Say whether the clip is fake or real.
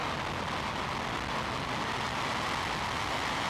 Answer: real